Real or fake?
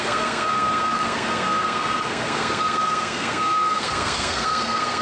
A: fake